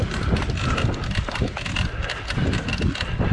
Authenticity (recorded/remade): recorded